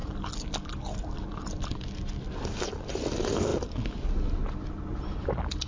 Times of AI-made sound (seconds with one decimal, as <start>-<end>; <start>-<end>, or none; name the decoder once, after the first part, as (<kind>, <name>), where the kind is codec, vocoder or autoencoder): none

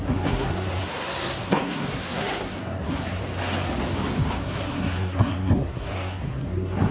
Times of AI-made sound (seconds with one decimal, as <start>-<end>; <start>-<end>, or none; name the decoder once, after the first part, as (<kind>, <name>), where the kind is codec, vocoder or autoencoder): 0.0-3.2 (codec, SNAC); 4.4-6.9

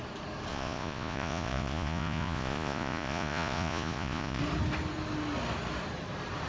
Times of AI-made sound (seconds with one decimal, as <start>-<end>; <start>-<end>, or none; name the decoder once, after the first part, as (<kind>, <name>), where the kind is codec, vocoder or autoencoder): 0.5-4.4 (vocoder, Vocos)

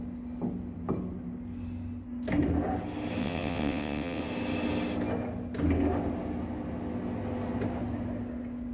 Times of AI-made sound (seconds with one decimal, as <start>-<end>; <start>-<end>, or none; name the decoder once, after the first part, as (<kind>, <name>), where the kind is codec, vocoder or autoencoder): 3.2-4.2 (vocoder, WaveNeXt)

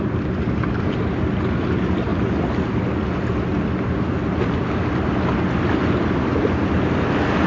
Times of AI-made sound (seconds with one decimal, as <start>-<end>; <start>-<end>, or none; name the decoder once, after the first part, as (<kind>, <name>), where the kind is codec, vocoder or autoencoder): none

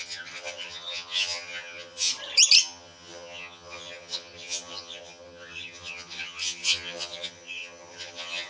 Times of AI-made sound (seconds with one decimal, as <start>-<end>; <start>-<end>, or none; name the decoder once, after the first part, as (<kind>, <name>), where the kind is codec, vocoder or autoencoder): 0.0-2.1 (vocoder, HiFi-GAN); 2.6-8.5

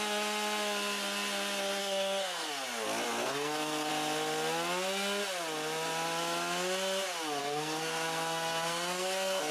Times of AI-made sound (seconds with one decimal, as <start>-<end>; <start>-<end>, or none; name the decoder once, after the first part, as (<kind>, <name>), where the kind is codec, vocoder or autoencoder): 1.8-2.5 (codec, SNAC); 3.2-3.9; 7.4-9.5

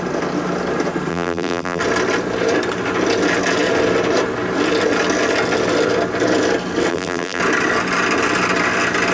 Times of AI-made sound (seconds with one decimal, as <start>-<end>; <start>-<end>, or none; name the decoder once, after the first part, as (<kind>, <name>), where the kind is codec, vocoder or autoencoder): 1.1-1.8 (vocoder, BigVGAN v2); 6.9-7.4